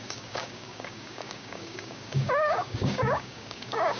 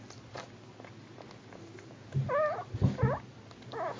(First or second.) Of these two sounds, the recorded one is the second